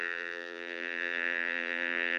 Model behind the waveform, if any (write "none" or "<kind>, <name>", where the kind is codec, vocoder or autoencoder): vocoder, BigVGAN v2